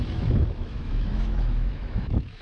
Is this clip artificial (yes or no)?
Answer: yes